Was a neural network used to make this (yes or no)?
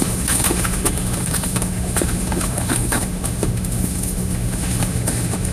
yes